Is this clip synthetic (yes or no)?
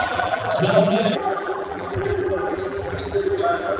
yes